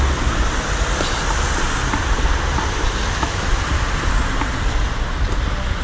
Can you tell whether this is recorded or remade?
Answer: recorded